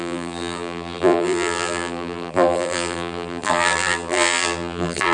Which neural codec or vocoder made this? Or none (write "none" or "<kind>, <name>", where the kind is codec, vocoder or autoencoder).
vocoder, BigVGAN v2